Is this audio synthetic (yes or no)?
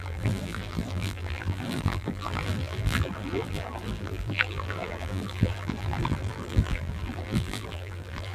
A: yes